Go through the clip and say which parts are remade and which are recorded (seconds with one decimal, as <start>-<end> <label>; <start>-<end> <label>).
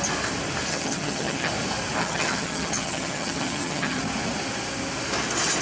0.0-0.7 recorded; 0.7-1.5 remade; 1.5-2.0 recorded; 2.0-4.0 remade; 4.0-5.6 recorded